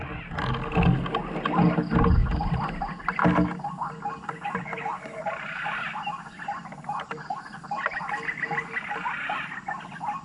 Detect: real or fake real